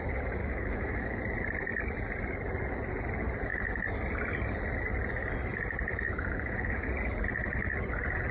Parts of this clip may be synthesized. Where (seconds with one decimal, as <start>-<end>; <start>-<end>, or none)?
0.4-1.2; 5.9-6.9